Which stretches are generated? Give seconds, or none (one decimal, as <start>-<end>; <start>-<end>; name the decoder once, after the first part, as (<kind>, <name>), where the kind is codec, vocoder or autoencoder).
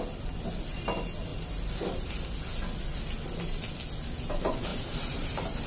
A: 1.3-2.1 (vocoder, BigVGAN v2); 4.7-5.7